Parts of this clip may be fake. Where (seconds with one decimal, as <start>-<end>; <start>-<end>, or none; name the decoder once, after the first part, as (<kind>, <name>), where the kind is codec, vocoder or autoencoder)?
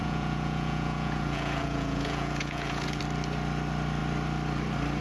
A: 0.0-3.0 (vocoder, Vocos)